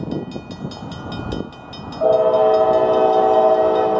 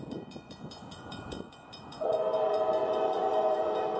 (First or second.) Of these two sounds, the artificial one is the second